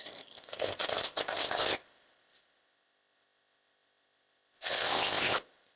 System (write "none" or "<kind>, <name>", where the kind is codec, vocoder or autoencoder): codec, ZipCodec